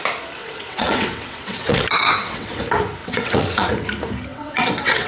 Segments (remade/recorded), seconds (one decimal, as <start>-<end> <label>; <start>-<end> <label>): 0.0-0.4 recorded; 0.4-2.6 remade; 2.6-3.0 recorded; 3.0-3.7 remade; 3.7-4.3 recorded; 4.3-5.1 remade